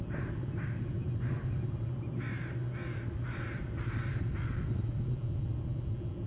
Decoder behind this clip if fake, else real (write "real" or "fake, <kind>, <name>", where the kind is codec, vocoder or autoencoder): real